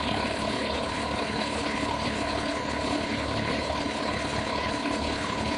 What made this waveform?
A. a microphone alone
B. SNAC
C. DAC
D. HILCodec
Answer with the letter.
D